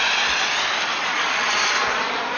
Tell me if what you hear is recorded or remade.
recorded